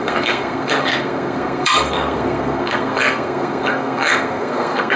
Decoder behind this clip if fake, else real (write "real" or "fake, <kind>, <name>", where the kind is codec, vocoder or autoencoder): fake, codec, SNAC